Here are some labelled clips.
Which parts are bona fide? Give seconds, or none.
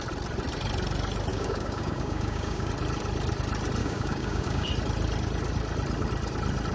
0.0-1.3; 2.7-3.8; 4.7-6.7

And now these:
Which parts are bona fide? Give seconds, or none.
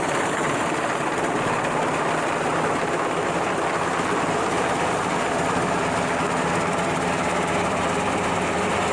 0.0-8.9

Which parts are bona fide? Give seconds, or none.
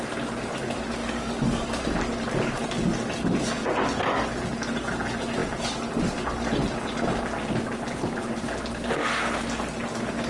0.0-1.0; 1.8-10.3